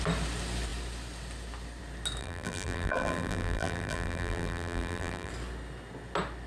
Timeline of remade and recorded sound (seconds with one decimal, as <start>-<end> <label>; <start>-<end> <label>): 0.0-2.2 recorded; 2.2-5.3 remade; 5.3-6.5 recorded